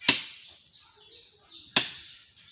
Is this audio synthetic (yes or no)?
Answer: no